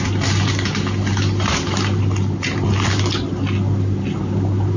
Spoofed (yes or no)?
no